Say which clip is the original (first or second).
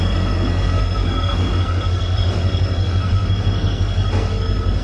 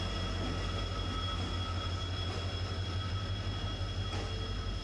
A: second